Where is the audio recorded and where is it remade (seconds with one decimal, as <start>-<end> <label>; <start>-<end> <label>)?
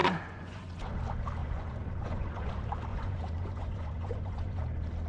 0.0-0.8 remade; 0.8-1.4 recorded; 1.4-2.5 remade; 2.5-2.9 recorded; 2.9-4.6 remade; 4.6-5.1 recorded